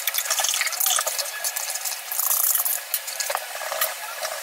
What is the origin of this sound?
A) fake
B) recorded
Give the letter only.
B